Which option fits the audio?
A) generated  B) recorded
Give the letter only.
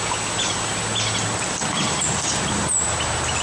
B